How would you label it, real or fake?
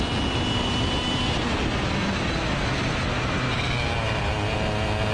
real